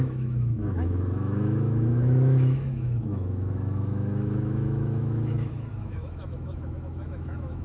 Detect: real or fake fake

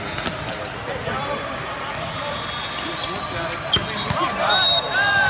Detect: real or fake real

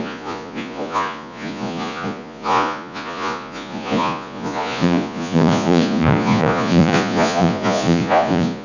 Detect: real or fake fake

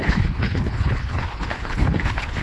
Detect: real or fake fake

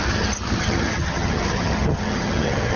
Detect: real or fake fake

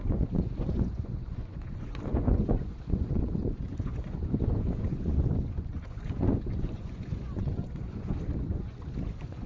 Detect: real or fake fake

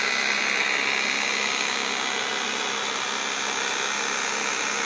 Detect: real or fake real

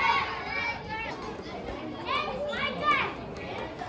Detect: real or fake real